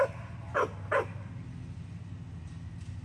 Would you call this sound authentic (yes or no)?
yes